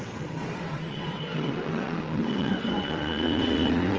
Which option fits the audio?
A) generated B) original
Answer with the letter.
A